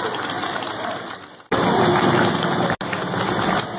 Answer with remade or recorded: recorded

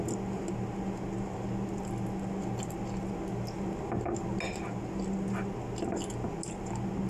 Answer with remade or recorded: recorded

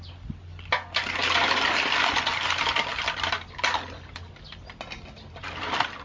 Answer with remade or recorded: recorded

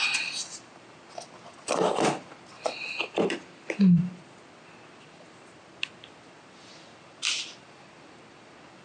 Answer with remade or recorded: recorded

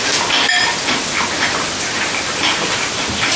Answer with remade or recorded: recorded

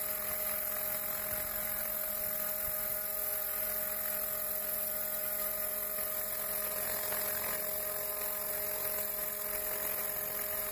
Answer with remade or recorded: recorded